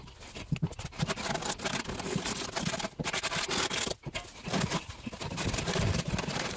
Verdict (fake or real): real